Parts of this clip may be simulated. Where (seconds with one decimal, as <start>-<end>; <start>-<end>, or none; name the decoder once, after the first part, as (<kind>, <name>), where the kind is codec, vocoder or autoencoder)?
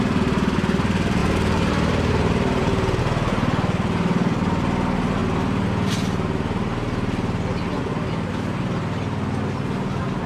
1.2-3.0 (vocoder, BigVGAN v2)